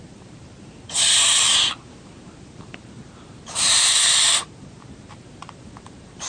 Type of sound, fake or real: fake